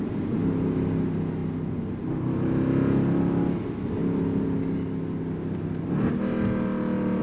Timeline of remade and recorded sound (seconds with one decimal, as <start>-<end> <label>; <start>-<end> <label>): 0.0-7.2 recorded